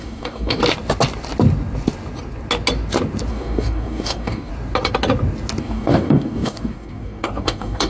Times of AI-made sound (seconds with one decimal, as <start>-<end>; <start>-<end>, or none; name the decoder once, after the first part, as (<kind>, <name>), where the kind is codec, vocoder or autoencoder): 0.0-0.6 (codec, DAC); 3.3-4.5; 5.6-7.9